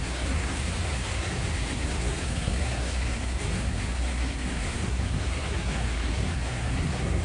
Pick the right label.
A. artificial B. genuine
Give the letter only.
A